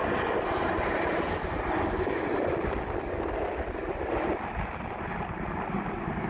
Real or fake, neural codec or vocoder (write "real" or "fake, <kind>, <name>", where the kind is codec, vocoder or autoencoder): real